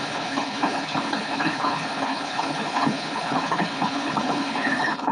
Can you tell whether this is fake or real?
fake